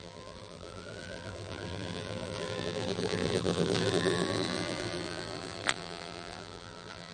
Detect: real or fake fake